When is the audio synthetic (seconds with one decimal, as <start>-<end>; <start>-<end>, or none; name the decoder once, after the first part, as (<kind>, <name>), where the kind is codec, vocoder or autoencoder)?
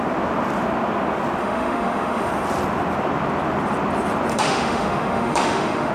1.4-2.3 (autoencoder, DAC-VAE); 4.3-5.9